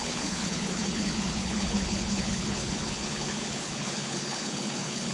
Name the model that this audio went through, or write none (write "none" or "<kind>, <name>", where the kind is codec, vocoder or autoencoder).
codec, HILCodec